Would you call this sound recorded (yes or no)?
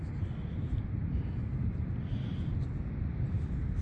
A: yes